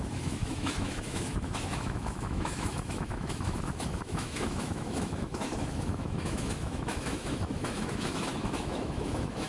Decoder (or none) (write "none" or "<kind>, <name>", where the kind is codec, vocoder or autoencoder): autoencoder, DAC-VAE